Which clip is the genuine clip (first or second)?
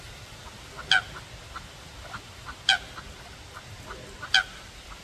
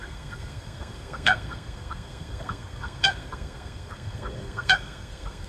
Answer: first